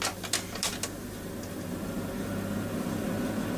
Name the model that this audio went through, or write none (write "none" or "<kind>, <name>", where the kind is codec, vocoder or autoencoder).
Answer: none